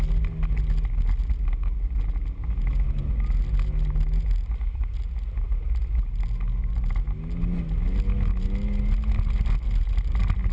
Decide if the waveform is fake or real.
real